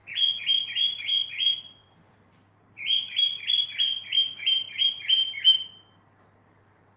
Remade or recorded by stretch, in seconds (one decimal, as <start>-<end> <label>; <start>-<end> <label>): 0.0-1.8 recorded; 1.8-4.9 remade; 4.9-7.0 recorded